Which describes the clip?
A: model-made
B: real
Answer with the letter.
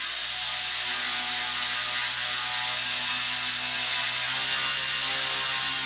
B